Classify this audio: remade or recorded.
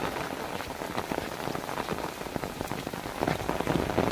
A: recorded